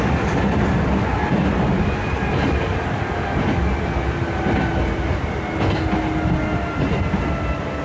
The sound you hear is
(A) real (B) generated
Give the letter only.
A